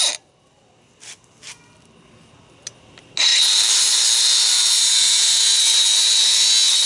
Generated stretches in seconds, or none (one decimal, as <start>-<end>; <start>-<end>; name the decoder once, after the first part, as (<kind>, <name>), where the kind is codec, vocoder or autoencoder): none